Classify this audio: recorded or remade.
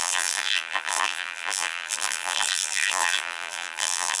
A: remade